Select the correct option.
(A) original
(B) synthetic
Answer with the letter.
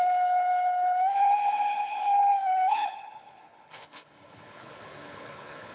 B